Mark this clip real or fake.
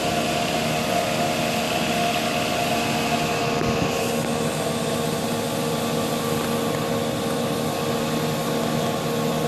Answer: real